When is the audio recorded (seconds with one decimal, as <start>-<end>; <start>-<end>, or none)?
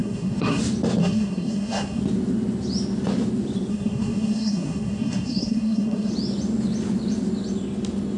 0.6-1.0; 2.0-3.7; 6.1-8.2